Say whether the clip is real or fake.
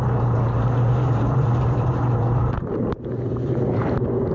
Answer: fake